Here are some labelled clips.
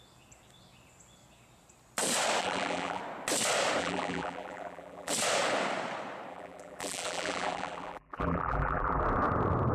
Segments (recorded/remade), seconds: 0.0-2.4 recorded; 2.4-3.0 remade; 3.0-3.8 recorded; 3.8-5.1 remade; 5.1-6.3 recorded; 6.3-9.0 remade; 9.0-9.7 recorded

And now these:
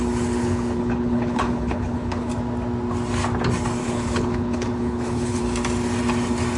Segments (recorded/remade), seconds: 0.0-0.4 recorded; 0.4-2.3 remade; 2.3-3.8 recorded; 3.8-5.4 remade; 5.4-6.6 recorded